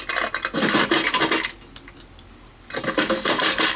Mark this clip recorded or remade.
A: recorded